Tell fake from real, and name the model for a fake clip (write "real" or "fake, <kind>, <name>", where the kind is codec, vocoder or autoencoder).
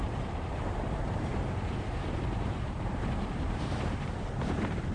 fake, vocoder, BigVGAN v2